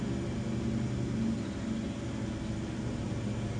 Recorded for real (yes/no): yes